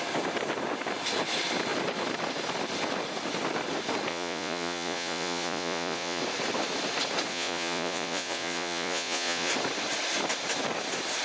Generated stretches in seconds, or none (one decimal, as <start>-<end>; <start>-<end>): 4.1-6.2; 7.3-9.5